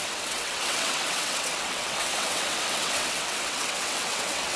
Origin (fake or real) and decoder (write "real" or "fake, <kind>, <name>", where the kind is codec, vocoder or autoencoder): fake, vocoder, WaveNeXt